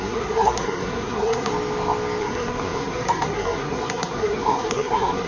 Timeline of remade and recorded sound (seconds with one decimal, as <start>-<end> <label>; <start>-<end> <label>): 0.0-1.5 remade; 1.5-2.2 recorded; 2.2-5.3 remade